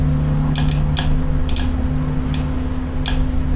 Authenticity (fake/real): real